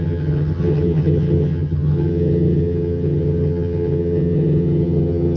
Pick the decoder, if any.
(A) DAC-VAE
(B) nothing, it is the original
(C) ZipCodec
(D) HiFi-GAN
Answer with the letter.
D